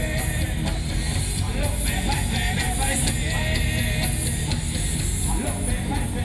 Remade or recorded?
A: recorded